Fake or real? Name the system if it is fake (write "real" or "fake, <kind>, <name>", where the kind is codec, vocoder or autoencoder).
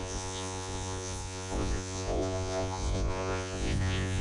fake, vocoder, Vocos